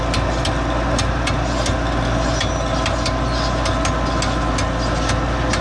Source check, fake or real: real